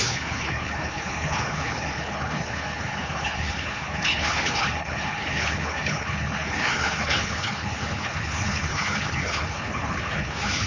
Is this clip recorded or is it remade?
remade